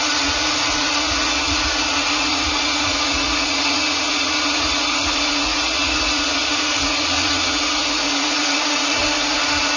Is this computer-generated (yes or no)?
yes